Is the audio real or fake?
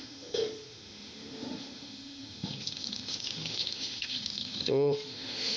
fake